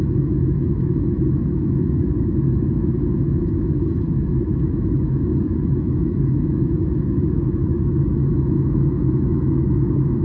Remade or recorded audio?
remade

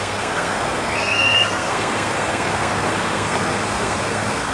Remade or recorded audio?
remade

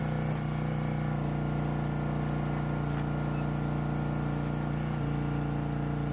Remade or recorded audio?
recorded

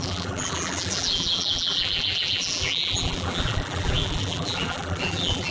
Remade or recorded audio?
remade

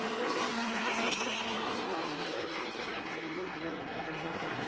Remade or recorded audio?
remade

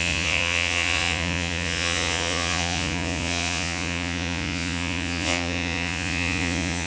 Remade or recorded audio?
remade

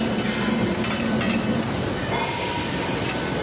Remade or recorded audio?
recorded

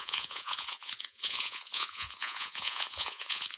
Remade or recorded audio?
remade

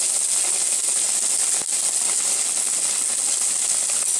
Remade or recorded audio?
recorded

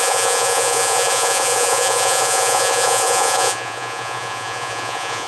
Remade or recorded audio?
remade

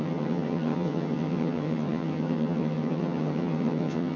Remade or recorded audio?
remade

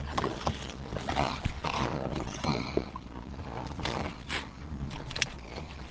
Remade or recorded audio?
remade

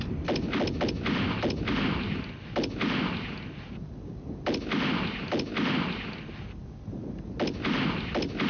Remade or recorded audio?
recorded